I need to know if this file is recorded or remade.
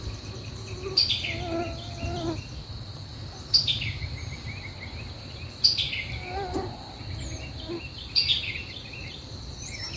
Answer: recorded